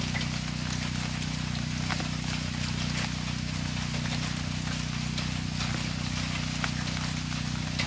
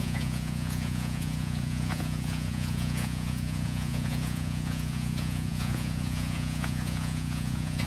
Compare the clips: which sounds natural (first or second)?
first